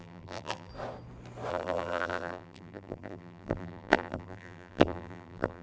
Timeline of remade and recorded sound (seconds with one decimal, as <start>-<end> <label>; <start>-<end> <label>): 0.0-0.7 remade; 0.7-1.5 recorded; 1.5-5.6 remade